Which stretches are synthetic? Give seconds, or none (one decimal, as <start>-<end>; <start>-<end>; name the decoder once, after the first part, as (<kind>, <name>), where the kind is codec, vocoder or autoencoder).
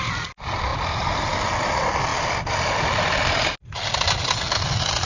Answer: none